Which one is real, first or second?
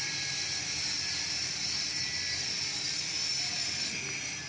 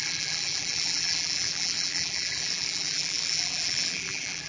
first